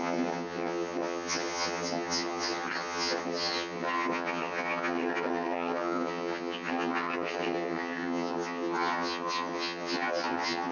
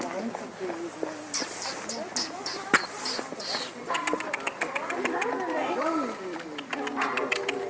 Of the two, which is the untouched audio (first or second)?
second